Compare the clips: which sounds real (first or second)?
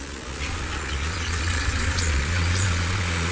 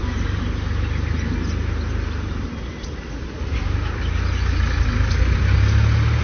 second